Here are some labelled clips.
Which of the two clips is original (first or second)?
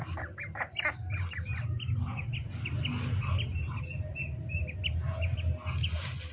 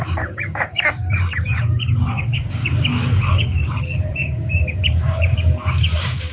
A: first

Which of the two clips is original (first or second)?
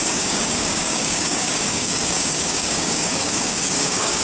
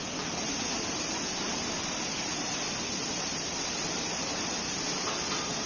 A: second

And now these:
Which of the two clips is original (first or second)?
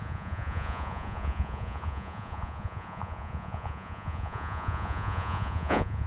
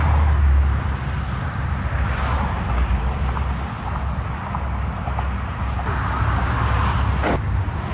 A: second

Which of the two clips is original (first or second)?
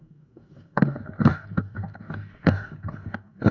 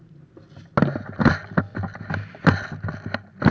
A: second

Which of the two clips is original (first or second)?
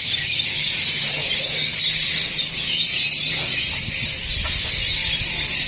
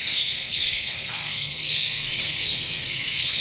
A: first